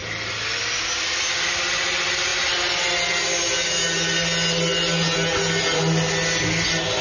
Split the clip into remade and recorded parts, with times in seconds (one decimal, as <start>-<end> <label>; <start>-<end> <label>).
0.0-7.0 recorded